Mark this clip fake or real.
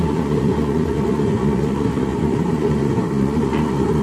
fake